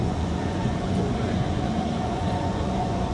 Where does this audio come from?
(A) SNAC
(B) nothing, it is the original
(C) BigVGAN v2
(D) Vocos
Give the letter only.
D